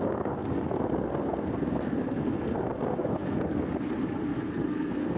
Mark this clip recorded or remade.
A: remade